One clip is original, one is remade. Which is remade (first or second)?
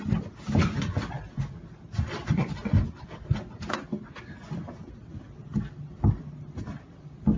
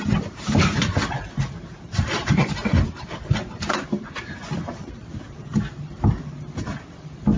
second